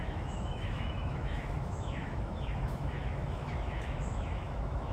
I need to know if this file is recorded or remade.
remade